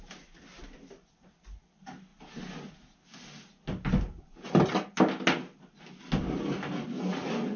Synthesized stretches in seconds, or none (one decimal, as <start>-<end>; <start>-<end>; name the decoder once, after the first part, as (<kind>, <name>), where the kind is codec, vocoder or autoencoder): none